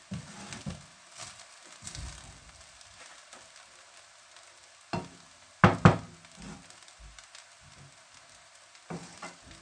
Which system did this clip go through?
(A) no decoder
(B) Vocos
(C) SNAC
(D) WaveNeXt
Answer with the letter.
A